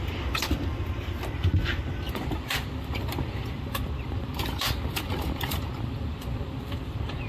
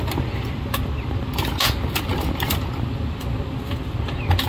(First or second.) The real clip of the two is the second